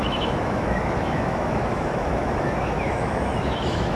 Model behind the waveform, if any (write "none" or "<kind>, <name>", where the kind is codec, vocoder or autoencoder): autoencoder, DAC-VAE